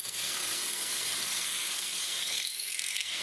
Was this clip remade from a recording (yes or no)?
yes